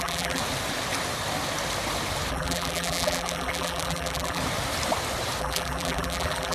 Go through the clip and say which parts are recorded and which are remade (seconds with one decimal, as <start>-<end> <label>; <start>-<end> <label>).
0.0-0.4 remade; 0.4-2.3 recorded; 2.3-4.4 remade; 4.4-5.4 recorded; 5.4-6.5 remade